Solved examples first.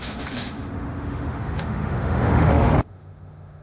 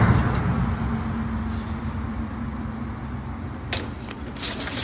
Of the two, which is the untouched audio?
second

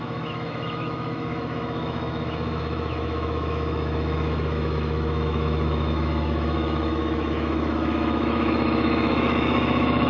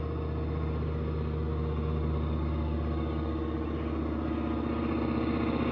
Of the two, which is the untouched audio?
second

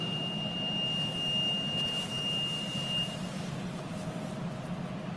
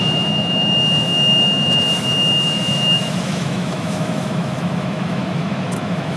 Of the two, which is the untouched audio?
first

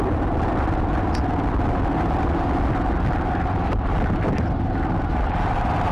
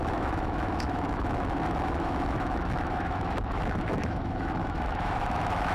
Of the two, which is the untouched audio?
first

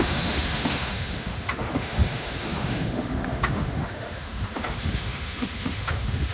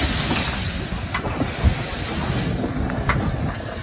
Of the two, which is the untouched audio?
second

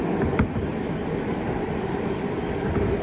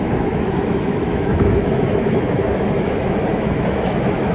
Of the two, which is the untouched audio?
first